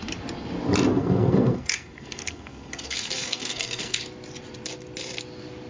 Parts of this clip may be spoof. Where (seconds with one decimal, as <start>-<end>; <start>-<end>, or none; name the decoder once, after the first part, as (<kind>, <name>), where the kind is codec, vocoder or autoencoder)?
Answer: 0.9-4.0 (codec, SNAC)